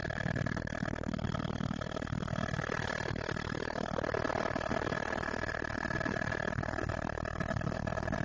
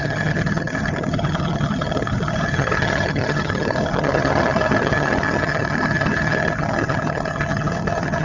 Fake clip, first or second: second